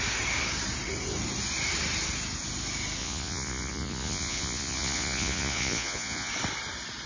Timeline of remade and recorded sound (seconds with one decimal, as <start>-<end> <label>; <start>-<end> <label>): 0.0-3.0 recorded; 3.0-6.3 remade; 6.3-7.1 recorded